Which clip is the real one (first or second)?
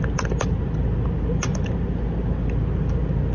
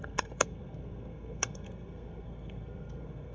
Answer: first